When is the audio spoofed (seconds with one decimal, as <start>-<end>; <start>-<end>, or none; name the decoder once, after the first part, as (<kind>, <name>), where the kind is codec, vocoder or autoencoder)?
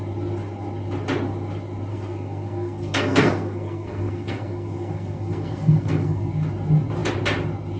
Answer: 1.9-6.3 (codec, SNAC)